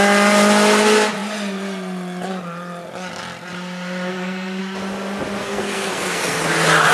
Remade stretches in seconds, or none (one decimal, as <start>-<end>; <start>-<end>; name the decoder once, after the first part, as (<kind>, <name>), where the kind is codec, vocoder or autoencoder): 4.1-4.6 (codec, SNAC); 5.4-6.4